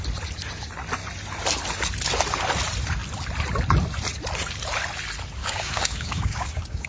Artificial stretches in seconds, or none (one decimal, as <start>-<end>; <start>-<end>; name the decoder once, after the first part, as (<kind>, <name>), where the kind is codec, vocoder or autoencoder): 5.4-6.9 (codec, DAC)